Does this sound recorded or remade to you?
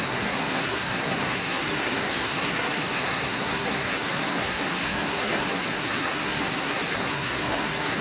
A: remade